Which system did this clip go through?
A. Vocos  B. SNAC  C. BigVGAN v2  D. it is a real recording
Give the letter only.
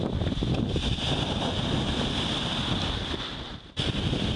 D